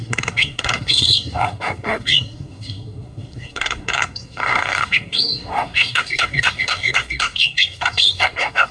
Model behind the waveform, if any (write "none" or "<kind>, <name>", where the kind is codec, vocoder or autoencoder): codec, SNAC